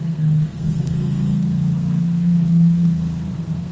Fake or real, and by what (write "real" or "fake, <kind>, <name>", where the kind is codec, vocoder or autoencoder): fake, codec, SNAC